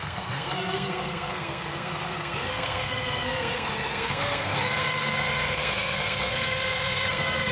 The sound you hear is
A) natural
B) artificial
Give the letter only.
B